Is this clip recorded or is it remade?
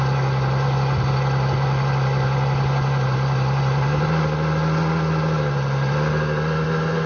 recorded